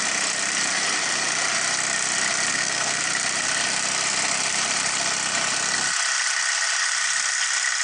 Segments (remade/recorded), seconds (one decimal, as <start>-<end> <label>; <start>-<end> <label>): 0.0-2.5 recorded; 2.5-3.0 remade; 3.0-7.8 recorded

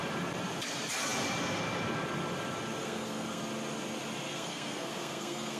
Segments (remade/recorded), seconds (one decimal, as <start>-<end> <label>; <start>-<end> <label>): 0.0-2.8 recorded; 2.8-3.4 remade; 3.4-4.3 recorded; 4.3-5.6 remade

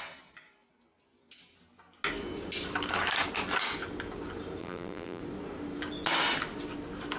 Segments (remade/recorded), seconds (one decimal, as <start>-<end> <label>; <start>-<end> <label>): 0.0-4.6 recorded; 4.6-5.2 remade; 5.2-7.2 recorded

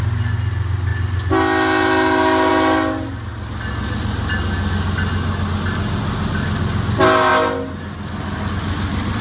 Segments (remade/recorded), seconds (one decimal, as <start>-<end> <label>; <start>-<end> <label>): 0.0-9.2 recorded

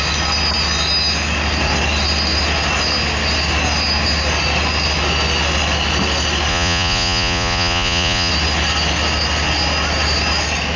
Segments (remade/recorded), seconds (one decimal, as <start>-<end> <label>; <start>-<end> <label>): 0.0-6.5 recorded; 6.5-8.3 remade; 8.3-10.8 recorded

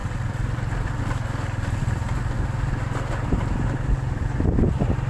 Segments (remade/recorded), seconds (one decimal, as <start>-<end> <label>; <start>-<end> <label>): 0.0-1.0 remade; 1.0-5.1 recorded

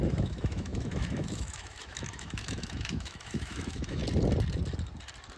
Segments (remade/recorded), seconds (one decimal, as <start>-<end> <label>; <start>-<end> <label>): 0.0-4.0 remade; 4.0-5.4 recorded

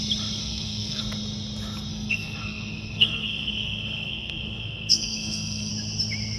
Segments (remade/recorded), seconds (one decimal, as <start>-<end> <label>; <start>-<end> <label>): 0.0-0.4 recorded; 0.4-1.0 remade; 1.0-1.9 recorded; 1.9-5.7 remade; 5.7-6.4 recorded